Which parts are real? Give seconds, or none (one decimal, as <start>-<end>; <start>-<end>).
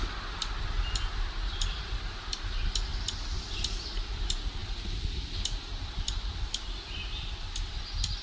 0.0-2.9; 3.9-8.2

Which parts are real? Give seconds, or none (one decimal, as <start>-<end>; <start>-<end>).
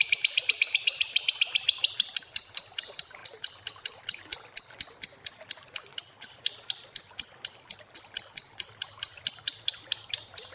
3.2-3.8; 4.3-8.4; 9.1-9.6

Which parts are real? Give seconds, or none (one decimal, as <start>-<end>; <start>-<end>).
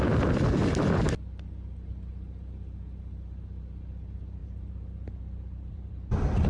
0.0-4.4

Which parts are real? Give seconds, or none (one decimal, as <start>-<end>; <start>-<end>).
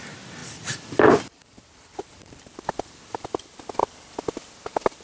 0.0-0.4; 3.4-3.8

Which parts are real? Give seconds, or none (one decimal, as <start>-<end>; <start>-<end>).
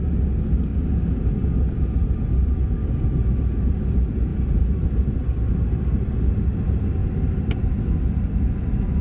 0.0-2.8; 3.4-4.3; 4.9-9.0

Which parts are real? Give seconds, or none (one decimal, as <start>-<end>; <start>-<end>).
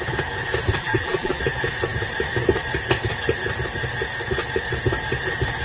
0.0-0.8; 1.4-5.6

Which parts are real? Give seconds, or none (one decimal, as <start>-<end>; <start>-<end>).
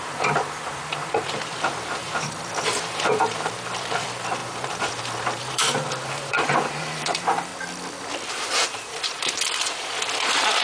7.5-8.3